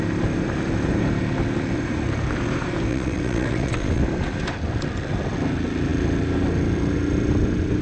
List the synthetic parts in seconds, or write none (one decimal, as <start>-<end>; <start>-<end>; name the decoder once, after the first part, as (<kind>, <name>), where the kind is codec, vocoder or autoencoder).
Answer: 2.9-4.0 (vocoder, WaveNeXt)